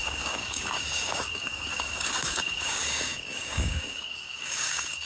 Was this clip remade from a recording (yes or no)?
yes